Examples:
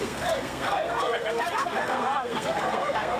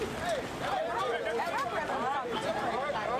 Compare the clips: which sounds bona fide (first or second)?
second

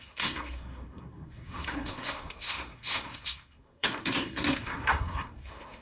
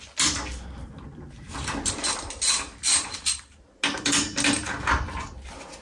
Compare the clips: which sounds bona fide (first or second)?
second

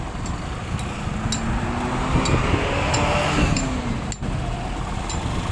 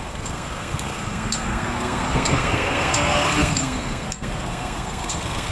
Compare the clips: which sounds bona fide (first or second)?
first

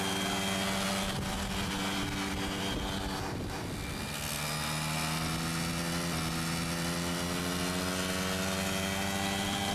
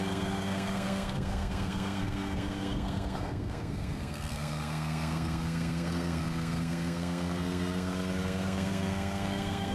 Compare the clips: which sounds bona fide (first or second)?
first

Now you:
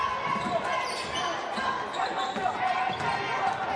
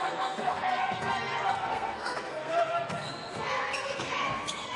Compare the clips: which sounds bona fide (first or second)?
first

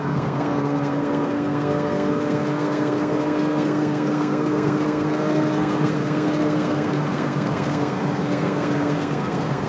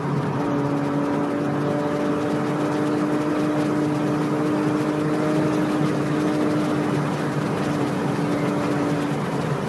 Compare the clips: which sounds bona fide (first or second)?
second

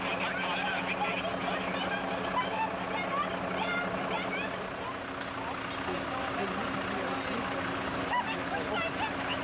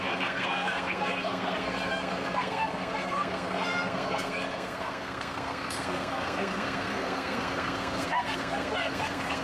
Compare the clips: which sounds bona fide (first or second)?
first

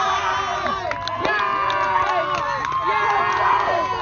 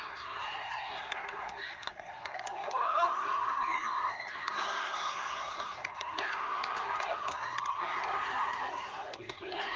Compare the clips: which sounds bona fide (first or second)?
first